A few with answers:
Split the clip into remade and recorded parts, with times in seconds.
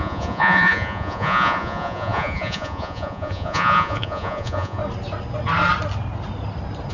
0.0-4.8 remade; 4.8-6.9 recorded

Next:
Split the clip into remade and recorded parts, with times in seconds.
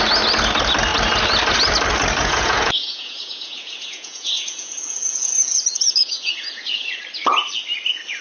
0.0-2.2 recorded; 2.2-7.0 remade; 7.0-8.2 recorded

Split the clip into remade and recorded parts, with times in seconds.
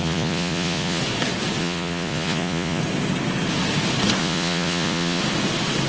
0.0-1.0 remade; 1.0-1.6 recorded; 1.6-2.8 remade; 2.8-4.2 recorded; 4.2-5.2 remade; 5.2-5.9 recorded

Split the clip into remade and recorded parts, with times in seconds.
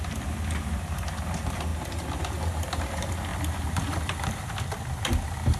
0.0-5.6 recorded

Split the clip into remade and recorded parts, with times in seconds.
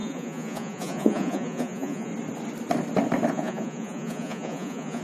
0.0-2.1 remade; 2.1-3.3 recorded; 3.3-5.0 remade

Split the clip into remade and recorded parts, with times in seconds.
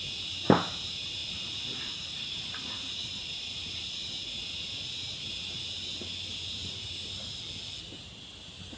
0.0-1.2 recorded; 1.2-4.0 remade; 4.0-6.6 recorded; 6.6-7.4 remade; 7.4-8.8 recorded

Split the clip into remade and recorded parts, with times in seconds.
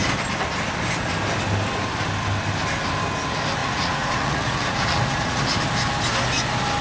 0.0-3.6 recorded; 3.6-5.4 remade; 5.4-6.8 recorded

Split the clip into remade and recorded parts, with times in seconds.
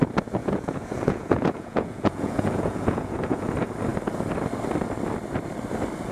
0.0-0.4 recorded; 0.4-3.5 remade; 3.5-6.1 recorded